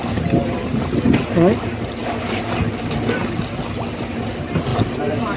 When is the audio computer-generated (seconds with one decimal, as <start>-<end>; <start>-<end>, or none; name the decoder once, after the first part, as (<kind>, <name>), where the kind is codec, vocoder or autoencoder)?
none